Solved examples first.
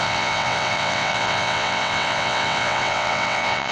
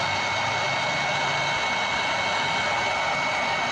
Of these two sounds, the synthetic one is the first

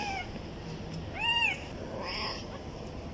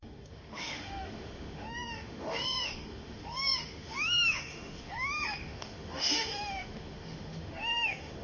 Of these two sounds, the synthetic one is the second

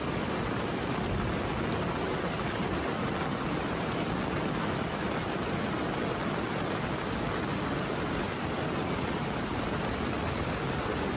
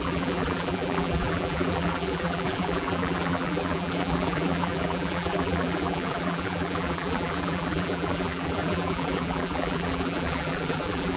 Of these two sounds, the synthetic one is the second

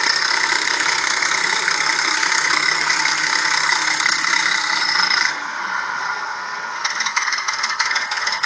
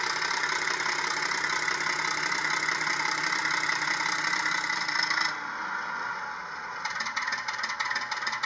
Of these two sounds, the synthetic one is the first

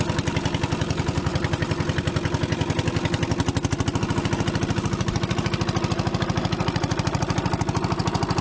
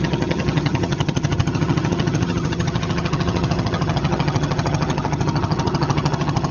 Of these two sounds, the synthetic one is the second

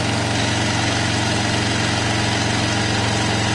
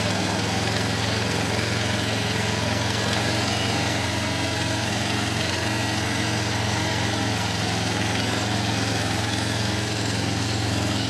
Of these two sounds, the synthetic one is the second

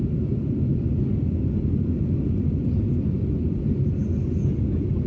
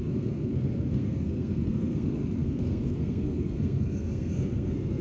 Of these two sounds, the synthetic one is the second